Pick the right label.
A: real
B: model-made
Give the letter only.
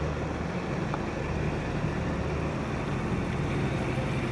A